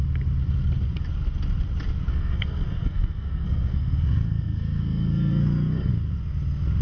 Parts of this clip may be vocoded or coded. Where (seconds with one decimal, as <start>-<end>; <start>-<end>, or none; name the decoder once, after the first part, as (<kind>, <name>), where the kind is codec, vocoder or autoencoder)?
2.1-5.9 (codec, SNAC)